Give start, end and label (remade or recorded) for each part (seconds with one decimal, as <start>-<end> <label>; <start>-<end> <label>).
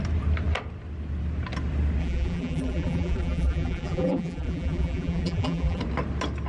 0.0-2.0 recorded; 2.0-5.8 remade; 5.8-6.5 recorded